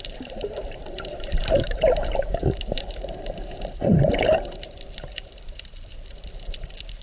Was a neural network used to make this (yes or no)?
yes